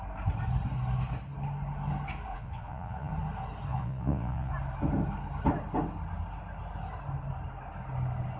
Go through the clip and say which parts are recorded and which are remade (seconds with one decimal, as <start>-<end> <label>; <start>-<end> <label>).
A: 0.0-2.3 recorded; 2.3-3.1 remade; 3.1-3.7 recorded; 3.7-4.5 remade; 4.5-8.4 recorded